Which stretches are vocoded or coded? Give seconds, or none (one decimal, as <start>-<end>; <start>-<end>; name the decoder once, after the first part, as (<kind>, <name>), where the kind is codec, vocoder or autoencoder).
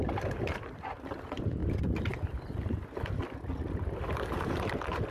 none